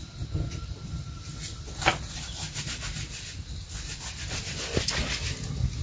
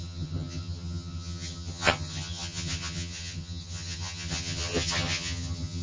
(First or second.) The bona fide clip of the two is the first